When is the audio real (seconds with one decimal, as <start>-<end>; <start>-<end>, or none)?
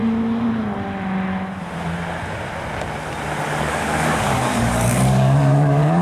0.0-3.6